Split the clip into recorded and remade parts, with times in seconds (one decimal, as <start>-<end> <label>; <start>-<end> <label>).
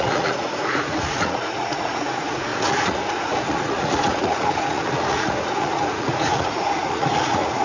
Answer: 0.0-7.6 remade